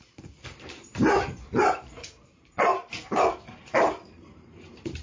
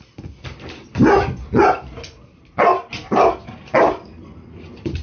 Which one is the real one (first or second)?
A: second